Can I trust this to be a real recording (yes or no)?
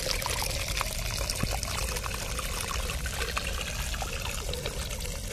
yes